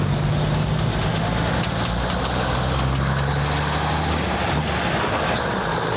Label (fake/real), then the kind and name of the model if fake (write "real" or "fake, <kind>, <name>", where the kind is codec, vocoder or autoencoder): real